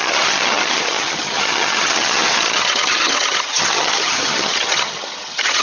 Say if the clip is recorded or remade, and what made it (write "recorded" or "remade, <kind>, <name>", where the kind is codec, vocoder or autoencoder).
remade, vocoder, HiFi-GAN